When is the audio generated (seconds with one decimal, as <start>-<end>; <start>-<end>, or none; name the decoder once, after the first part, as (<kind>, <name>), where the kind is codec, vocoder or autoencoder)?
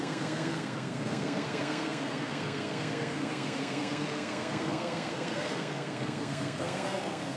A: 0.0-7.4 (codec, SNAC)